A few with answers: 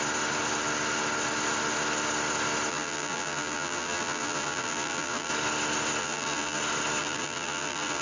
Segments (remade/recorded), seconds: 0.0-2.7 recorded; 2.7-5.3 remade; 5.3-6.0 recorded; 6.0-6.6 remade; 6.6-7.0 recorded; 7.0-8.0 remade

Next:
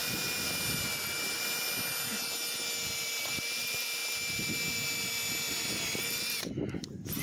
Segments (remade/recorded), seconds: 0.0-3.6 recorded; 3.6-4.0 remade; 4.0-6.0 recorded; 6.0-7.2 remade

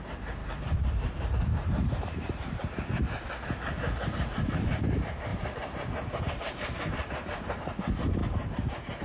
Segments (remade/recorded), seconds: 0.0-8.2 remade; 8.2-9.0 recorded

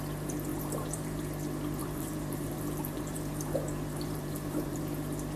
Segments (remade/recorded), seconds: 0.0-0.5 recorded; 0.5-1.2 remade; 1.2-1.8 recorded; 1.8-4.8 remade; 4.8-5.4 recorded

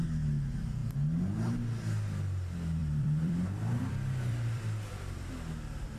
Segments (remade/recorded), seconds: 0.0-2.8 recorded; 2.8-5.3 remade; 5.3-6.0 recorded